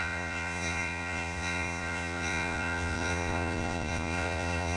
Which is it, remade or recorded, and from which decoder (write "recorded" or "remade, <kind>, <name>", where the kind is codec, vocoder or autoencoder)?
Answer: remade, vocoder, Vocos